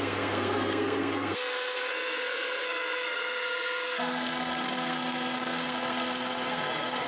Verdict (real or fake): fake